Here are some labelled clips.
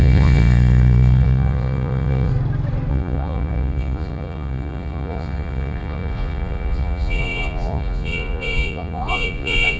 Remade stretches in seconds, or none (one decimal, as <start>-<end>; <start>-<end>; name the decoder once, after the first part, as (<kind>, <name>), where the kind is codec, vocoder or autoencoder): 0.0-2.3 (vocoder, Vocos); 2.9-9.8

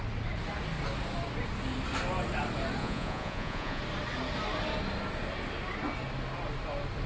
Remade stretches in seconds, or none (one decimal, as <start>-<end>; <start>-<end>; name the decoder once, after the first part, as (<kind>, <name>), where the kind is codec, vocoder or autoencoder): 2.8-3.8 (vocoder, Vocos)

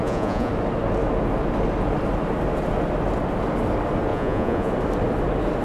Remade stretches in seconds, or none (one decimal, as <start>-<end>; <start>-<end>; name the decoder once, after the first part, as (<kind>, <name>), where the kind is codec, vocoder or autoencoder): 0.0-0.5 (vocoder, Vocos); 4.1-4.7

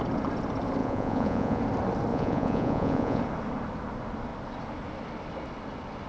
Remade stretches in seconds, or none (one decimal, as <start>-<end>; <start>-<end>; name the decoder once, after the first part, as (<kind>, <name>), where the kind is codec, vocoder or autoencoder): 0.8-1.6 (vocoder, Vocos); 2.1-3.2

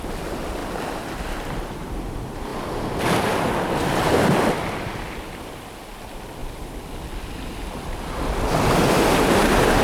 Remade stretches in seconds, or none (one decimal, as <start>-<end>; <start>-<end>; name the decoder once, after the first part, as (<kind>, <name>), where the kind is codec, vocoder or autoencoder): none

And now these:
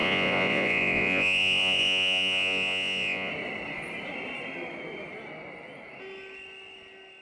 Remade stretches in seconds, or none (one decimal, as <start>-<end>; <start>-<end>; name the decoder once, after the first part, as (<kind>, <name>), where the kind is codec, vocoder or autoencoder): 0.0-3.3 (vocoder, Vocos)

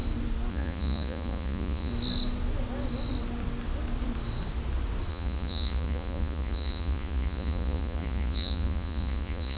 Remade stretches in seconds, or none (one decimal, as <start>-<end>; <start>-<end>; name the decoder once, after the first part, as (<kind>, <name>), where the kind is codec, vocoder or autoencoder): 0.5-1.9 (vocoder, Vocos); 5.1-9.6